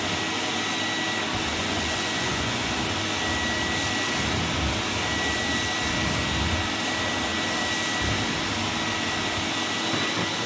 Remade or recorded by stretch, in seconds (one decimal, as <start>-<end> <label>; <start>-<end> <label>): 0.0-1.5 recorded; 1.5-2.7 remade; 2.7-10.5 recorded